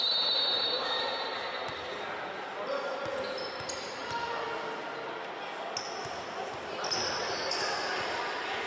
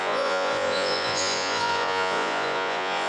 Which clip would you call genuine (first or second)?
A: first